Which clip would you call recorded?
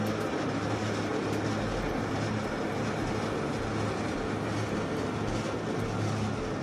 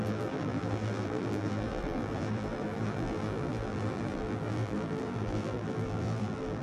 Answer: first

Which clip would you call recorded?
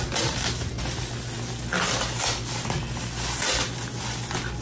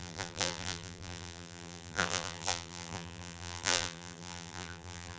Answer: first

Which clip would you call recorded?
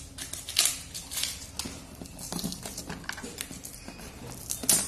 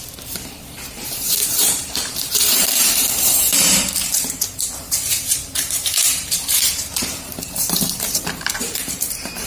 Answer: first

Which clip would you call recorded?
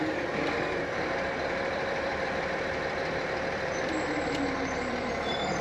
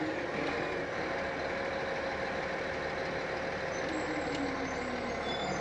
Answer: second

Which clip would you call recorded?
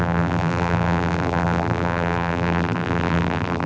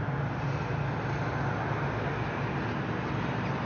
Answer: second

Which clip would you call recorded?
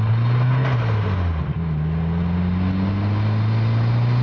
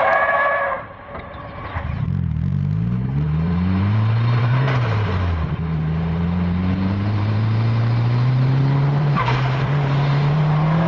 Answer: first